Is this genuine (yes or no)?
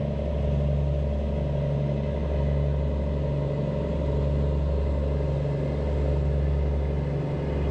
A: yes